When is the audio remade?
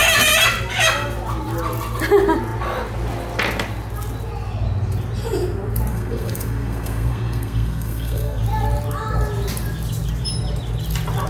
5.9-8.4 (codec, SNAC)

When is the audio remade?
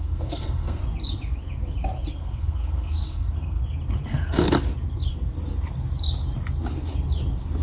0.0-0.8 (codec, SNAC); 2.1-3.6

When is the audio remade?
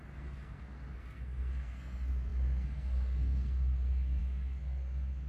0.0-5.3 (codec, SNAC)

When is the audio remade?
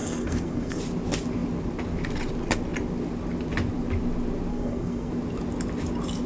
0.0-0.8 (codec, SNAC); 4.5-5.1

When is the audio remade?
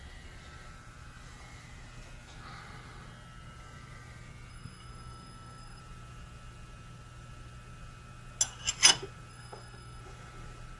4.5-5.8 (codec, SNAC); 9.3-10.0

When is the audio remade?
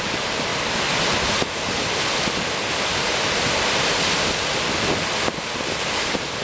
none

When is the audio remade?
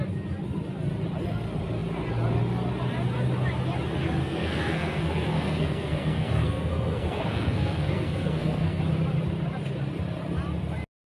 4.2-8.8 (codec, SNAC)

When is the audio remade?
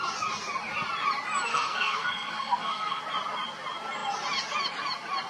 1.5-3.0 (codec, SNAC)